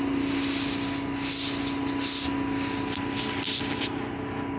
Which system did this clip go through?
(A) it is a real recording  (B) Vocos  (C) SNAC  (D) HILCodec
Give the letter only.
A